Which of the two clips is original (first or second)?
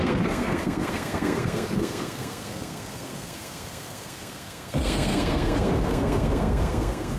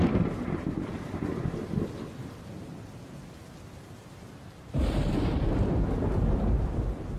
second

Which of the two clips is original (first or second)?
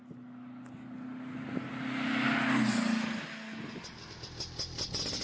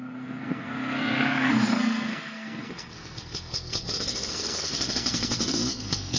first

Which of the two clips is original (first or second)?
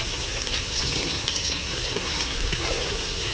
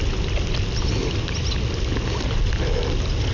second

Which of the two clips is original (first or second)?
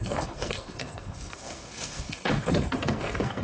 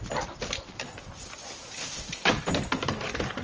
second